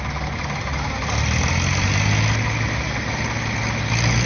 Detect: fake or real real